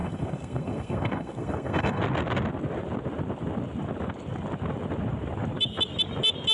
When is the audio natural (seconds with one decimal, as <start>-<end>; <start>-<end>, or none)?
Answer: 2.0-6.5